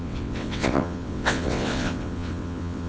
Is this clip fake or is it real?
fake